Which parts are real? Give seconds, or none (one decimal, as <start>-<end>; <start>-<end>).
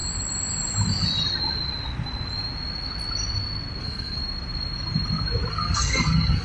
0.0-3.8; 4.2-5.5